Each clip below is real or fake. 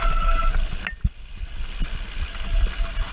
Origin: real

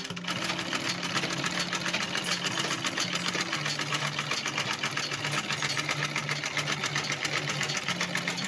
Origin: real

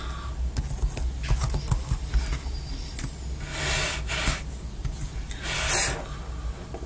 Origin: real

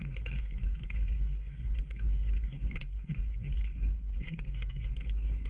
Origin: fake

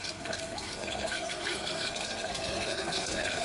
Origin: fake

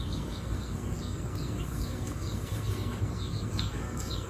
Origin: fake